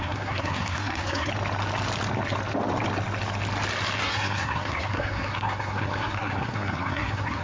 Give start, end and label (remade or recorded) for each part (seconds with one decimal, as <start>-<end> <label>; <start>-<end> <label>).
0.0-1.3 remade; 1.3-4.0 recorded; 4.0-7.4 remade